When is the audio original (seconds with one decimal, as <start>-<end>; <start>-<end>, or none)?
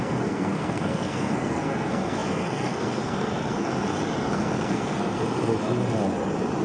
3.7-4.3; 5.2-6.6